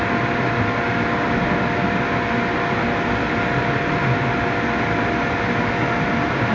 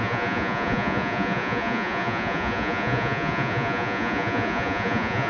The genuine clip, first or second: first